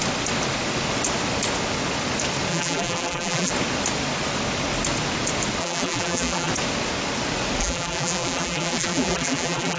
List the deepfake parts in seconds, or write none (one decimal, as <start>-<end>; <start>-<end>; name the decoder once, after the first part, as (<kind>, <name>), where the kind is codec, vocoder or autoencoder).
2.5-3.5 (vocoder, BigVGAN v2); 5.6-6.5; 7.6-9.8